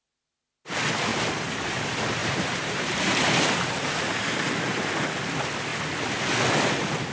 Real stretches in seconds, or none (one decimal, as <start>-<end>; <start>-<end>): 0.0-1.1; 1.8-2.2; 4.9-7.1